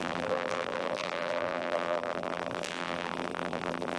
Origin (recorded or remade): remade